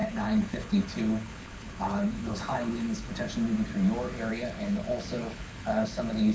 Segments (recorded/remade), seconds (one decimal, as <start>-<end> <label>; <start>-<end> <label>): 0.0-3.1 remade; 3.1-4.3 recorded; 4.3-6.3 remade